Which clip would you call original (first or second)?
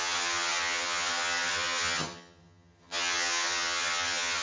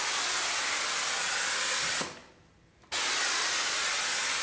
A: second